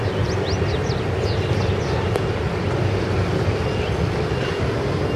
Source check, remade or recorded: recorded